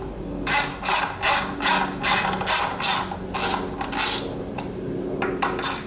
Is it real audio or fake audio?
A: real